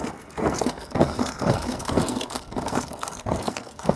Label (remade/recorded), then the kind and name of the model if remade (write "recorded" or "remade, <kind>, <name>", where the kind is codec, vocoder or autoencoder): remade, codec, SNAC